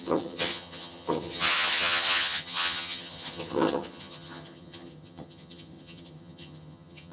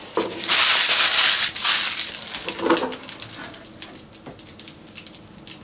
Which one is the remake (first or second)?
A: first